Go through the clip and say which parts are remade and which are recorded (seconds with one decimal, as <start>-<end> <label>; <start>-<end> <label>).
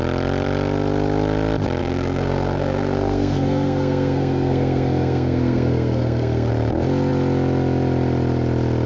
0.0-1.8 recorded; 1.8-6.5 remade; 6.5-8.9 recorded